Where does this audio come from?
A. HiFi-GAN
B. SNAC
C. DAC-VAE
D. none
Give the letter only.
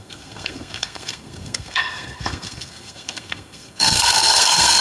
B